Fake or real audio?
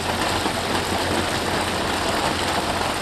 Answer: real